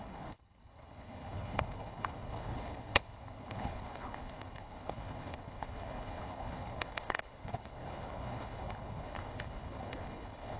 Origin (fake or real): fake